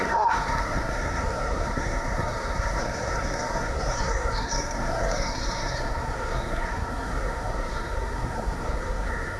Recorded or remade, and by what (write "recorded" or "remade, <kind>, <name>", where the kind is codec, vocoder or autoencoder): remade, codec, SNAC